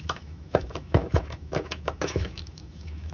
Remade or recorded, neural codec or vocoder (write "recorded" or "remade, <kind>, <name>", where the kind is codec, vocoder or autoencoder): remade, autoencoder, DAC-VAE